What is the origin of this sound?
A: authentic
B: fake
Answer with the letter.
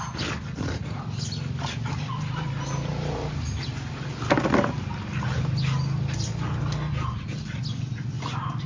A